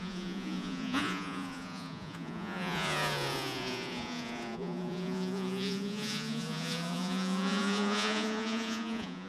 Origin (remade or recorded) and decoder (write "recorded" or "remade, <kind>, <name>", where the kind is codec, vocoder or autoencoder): remade, vocoder, Vocos